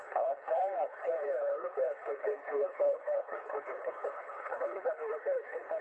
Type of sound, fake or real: fake